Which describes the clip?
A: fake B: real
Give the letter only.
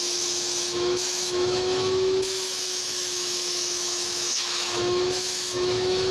A